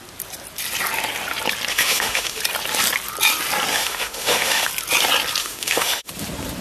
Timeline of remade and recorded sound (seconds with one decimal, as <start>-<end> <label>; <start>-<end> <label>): 0.0-1.7 recorded; 1.7-2.4 remade; 2.4-3.7 recorded; 3.7-4.7 remade; 4.7-5.4 recorded; 5.4-6.1 remade; 6.1-6.6 recorded